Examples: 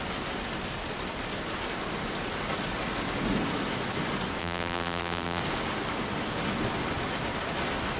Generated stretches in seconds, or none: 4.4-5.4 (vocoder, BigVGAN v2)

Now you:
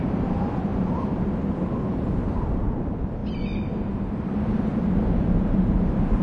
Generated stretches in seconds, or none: 0.0-0.7 (vocoder, BigVGAN v2); 1.9-3.2; 3.8-6.2